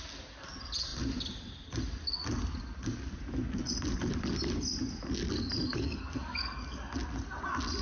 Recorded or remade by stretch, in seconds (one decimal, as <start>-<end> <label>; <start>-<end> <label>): 0.0-5.7 recorded; 5.7-6.8 remade; 6.8-7.8 recorded